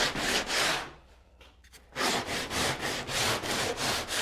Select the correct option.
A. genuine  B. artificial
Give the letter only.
B